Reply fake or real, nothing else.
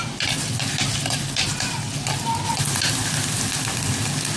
real